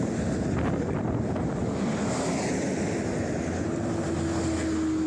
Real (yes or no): yes